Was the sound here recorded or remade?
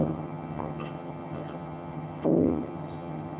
remade